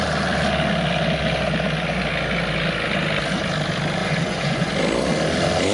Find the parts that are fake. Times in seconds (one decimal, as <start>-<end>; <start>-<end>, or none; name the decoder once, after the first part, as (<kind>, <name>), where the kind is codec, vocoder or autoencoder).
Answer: 4.0-4.7 (vocoder, Vocos)